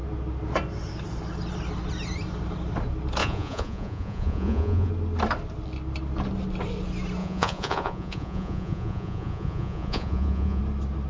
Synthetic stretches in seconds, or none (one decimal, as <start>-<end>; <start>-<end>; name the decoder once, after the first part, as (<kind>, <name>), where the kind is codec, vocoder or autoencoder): 3.2-4.9 (vocoder, Vocos); 7.2-10.6